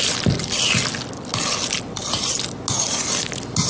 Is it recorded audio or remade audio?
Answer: recorded